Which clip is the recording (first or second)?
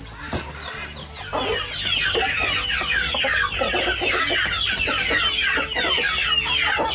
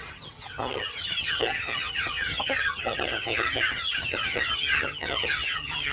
first